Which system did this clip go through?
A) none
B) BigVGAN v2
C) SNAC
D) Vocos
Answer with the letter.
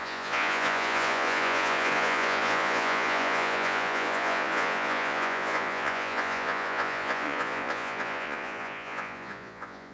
D